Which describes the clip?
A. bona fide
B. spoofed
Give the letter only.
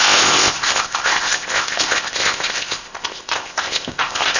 B